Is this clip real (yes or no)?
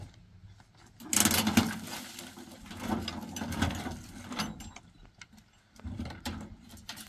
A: yes